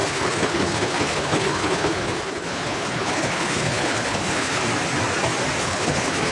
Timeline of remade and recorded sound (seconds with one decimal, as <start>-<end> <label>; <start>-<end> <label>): 0.0-4.6 remade; 4.6-5.6 recorded; 5.6-6.3 remade